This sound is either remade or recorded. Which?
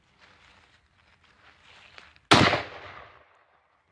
recorded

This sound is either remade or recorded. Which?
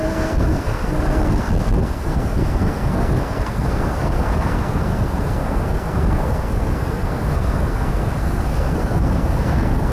remade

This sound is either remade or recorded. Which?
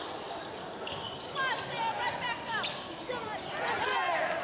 recorded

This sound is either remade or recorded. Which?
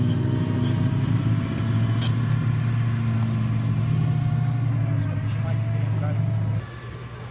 recorded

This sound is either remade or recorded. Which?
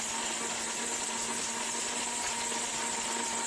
recorded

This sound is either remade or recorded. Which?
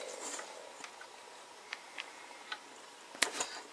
remade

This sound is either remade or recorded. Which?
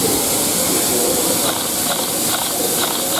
recorded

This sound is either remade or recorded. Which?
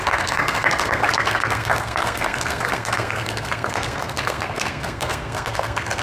remade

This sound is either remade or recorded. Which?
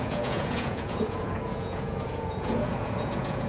remade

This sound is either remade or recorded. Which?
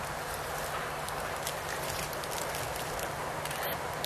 recorded